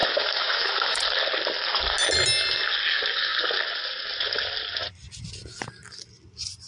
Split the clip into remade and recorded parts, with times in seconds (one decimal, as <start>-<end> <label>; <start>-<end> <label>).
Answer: 0.0-1.0 remade; 1.0-6.7 recorded